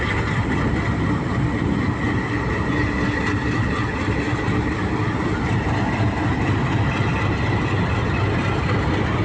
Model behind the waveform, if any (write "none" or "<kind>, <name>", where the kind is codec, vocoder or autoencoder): none